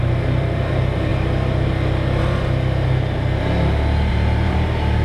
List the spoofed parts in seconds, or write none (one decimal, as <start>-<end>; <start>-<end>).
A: 0.0-1.1; 4.1-5.0